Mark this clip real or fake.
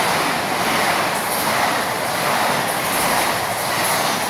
real